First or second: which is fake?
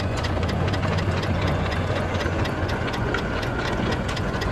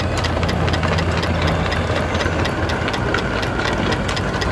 first